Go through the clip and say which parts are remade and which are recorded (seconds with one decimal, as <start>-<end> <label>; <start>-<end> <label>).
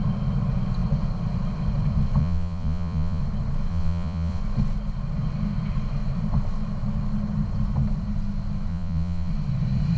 0.0-2.2 recorded; 2.2-3.2 remade; 3.2-3.7 recorded; 3.7-4.4 remade; 4.4-8.7 recorded; 8.7-9.3 remade; 9.3-10.0 recorded